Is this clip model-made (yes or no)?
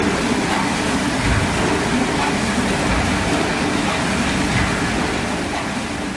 no